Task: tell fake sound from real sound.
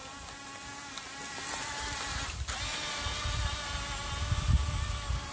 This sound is real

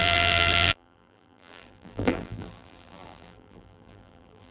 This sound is fake